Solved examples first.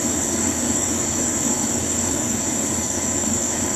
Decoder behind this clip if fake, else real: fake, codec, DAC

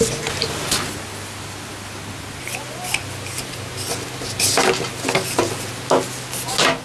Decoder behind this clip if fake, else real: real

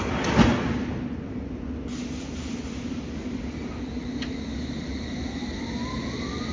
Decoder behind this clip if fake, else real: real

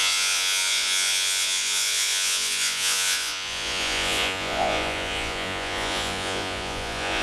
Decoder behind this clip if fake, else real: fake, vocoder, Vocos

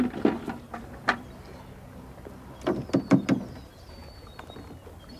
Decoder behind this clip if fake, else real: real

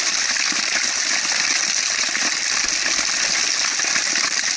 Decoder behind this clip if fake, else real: real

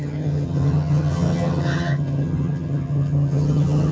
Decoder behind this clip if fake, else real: fake, vocoder, HiFi-GAN